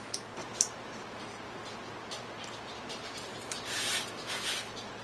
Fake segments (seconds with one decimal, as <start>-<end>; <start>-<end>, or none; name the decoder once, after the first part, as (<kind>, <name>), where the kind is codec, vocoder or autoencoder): 0.4-1.0 (vocoder, BigVGAN v2); 2.7-4.1